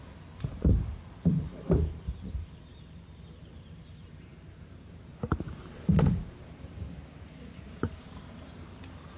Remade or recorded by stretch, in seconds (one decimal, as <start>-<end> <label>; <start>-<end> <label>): 0.0-9.2 remade